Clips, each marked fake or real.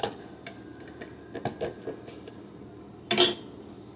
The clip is real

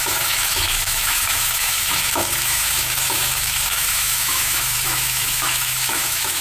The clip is fake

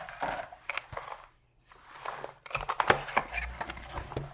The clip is real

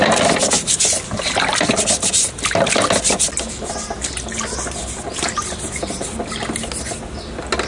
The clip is real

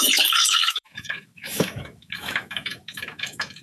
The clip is fake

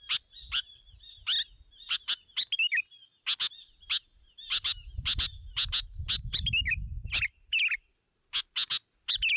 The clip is real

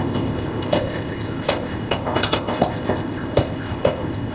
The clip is fake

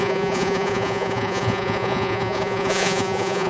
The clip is fake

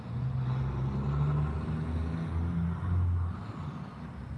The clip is real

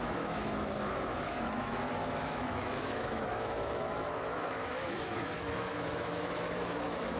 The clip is fake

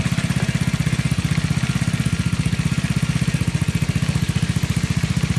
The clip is real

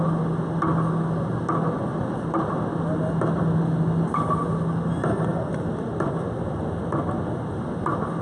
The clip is real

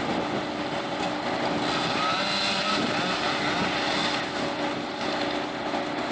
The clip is real